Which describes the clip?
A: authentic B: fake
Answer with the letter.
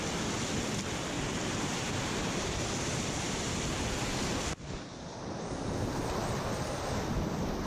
A